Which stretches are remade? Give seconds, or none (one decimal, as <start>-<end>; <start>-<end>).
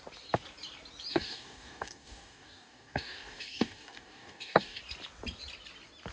1.1-4.8